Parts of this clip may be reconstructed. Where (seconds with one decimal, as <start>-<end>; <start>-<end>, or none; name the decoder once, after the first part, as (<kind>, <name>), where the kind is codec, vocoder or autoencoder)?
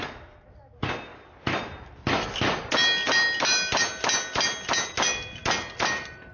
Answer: none